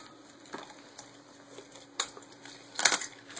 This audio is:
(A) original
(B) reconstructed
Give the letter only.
A